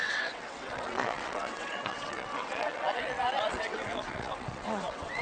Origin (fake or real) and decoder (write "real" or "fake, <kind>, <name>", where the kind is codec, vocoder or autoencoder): fake, vocoder, WaveNeXt